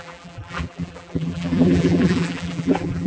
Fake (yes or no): yes